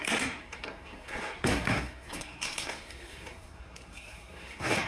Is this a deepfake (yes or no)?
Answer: yes